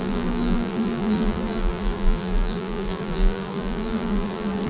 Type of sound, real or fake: fake